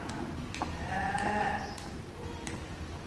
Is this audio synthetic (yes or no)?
yes